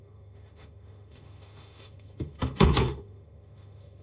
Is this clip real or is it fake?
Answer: fake